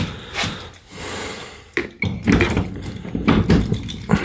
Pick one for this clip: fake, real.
real